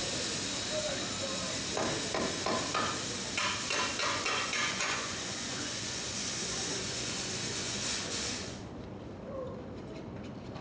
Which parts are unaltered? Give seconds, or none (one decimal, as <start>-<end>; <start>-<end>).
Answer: 0.0-4.0; 8.6-10.6

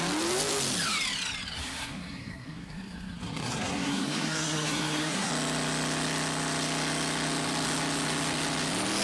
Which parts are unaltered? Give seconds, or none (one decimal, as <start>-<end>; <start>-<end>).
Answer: 0.0-1.6; 5.3-9.0

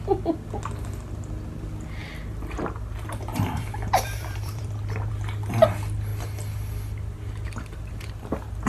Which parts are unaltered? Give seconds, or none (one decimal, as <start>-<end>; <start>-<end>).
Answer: 0.0-3.3; 5.1-8.7

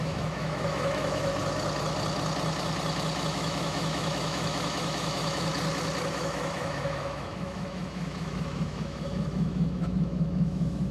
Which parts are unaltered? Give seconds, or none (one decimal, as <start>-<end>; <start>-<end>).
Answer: 1.3-3.3; 5.5-6.1

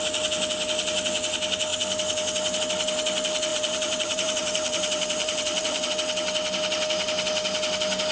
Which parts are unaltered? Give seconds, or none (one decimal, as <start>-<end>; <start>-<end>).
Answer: 0.0-3.5; 5.9-8.1

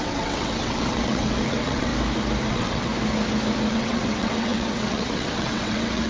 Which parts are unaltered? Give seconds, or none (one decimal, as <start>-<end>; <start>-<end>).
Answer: 1.9-2.5; 2.9-3.7